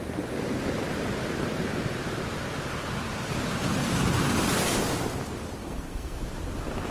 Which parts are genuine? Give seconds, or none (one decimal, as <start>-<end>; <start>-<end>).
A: 0.0-5.6; 6.2-6.9